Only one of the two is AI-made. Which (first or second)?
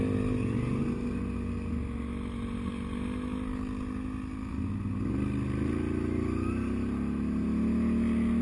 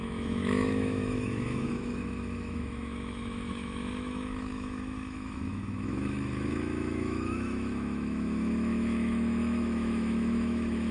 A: second